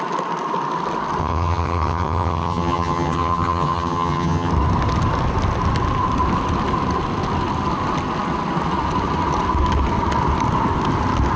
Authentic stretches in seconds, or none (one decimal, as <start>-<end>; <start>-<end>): 0.0-1.2; 4.5-11.4